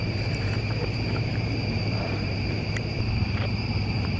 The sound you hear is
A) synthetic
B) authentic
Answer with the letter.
A